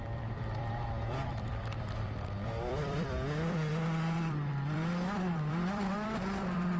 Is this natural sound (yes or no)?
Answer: no